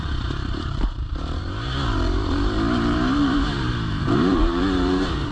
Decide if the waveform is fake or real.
fake